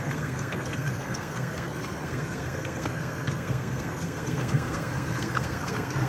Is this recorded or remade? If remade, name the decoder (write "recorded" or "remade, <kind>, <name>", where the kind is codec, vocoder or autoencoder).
remade, codec, SNAC